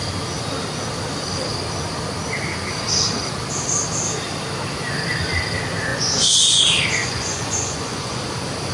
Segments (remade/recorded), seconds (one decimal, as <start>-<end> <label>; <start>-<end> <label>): 0.0-5.9 recorded; 5.9-6.6 remade; 6.6-7.0 recorded; 7.0-8.2 remade; 8.2-8.7 recorded